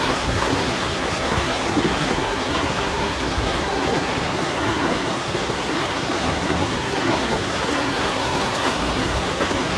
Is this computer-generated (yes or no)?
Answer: yes